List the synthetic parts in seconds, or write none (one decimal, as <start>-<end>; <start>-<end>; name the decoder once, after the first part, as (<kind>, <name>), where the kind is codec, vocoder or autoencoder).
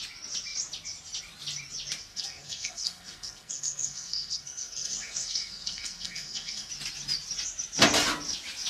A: 2.1-6.7 (codec, SNAC)